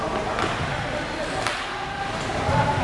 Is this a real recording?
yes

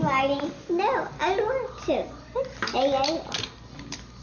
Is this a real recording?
yes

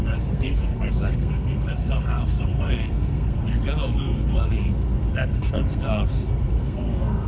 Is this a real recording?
no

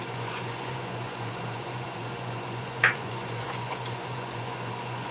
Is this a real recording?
no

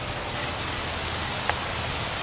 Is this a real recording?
yes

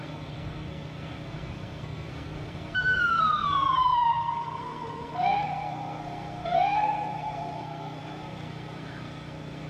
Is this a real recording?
no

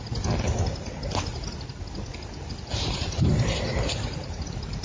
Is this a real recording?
yes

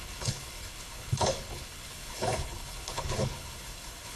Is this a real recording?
no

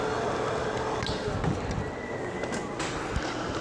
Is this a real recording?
yes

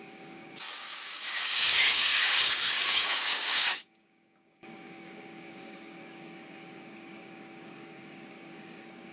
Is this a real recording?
no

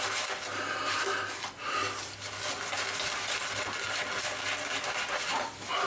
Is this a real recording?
yes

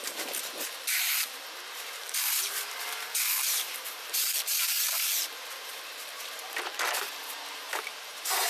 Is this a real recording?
no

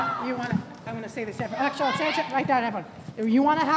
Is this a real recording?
yes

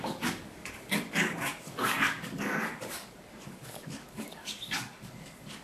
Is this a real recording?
no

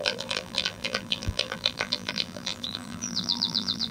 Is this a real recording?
no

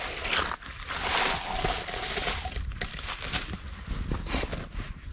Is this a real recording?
yes